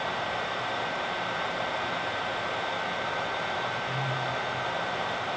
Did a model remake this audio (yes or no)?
yes